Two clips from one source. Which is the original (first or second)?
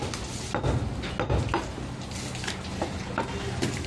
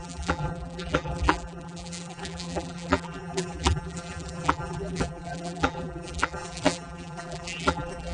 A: first